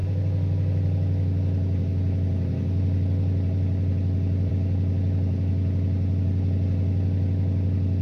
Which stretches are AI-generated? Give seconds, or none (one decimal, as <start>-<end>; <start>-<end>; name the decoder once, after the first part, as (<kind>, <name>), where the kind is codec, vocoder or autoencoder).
none